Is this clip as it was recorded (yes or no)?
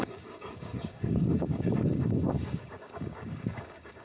no